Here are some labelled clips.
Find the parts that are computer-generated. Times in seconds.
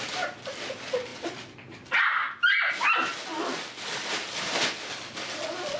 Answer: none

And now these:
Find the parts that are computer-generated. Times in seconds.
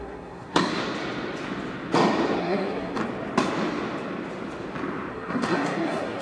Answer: 0.0-0.8 (codec, SNAC); 2.4-3.0; 5.1-6.2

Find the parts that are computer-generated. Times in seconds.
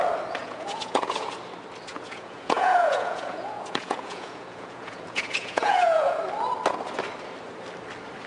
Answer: 0.4-1.3 (vocoder, Vocos); 1.9-6.2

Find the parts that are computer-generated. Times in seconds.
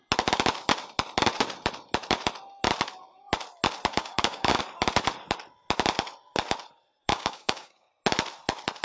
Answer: 3.9-4.6 (codec, DAC); 7.0-7.9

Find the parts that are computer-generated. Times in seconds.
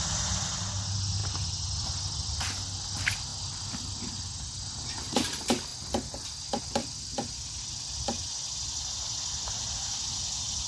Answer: none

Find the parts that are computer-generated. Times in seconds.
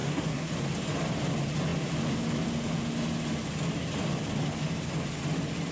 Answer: 0.0-0.5 (codec, SNAC)